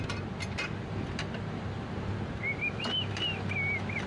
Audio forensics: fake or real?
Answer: real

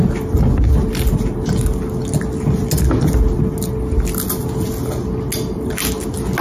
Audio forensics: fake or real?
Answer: real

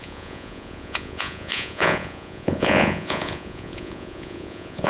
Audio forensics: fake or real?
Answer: fake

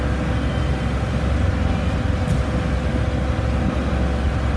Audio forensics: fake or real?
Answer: real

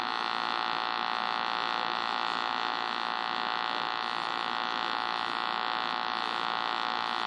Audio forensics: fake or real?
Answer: real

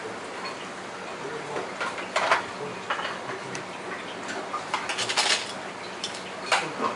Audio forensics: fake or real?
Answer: real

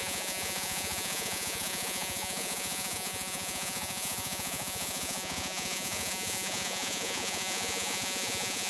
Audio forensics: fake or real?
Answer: fake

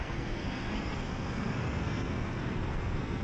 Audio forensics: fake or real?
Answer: fake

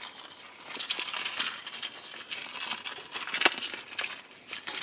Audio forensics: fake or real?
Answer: real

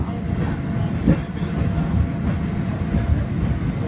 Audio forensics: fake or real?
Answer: real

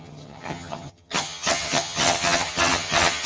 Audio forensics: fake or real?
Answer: fake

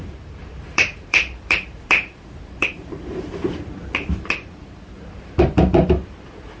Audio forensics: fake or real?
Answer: fake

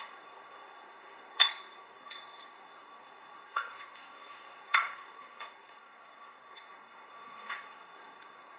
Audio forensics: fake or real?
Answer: fake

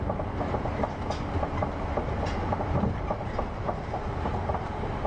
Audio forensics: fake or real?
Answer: real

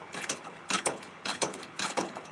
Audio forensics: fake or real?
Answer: fake